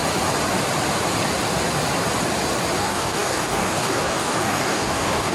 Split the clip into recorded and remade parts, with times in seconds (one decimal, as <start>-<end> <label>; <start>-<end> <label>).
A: 0.0-2.8 recorded; 2.8-5.3 remade